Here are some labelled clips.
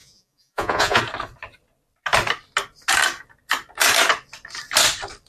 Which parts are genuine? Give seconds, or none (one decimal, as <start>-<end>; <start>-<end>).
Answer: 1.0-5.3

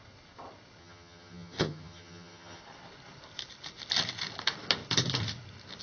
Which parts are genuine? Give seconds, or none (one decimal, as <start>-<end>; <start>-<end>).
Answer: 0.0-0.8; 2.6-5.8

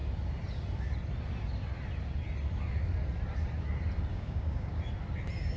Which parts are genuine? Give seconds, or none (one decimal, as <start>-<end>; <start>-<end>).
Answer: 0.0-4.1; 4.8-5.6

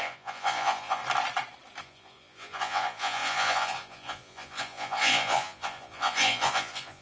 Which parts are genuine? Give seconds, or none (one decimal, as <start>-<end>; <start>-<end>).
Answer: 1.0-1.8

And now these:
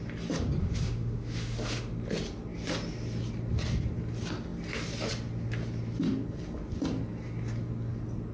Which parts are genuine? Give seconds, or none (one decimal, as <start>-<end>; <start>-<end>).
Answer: 0.0-0.6; 1.9-8.3

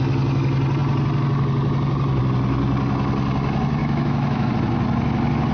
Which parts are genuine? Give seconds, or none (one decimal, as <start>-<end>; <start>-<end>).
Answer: 0.0-3.8; 4.5-5.5